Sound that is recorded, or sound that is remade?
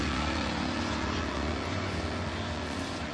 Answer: remade